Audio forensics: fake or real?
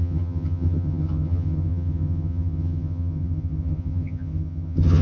fake